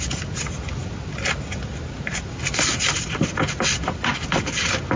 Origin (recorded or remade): recorded